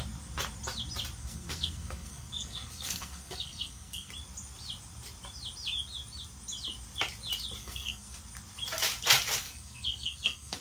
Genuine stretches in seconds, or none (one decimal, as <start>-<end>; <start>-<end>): 0.0-1.2; 4.1-7.6; 8.2-9.4